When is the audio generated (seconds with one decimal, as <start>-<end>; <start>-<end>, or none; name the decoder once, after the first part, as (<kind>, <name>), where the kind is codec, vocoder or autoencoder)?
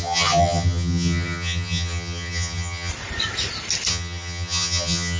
0.0-2.9 (vocoder, HiFi-GAN); 3.9-5.2